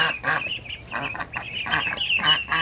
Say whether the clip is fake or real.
real